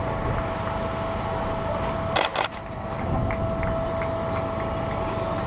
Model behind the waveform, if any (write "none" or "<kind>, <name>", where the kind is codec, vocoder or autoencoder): none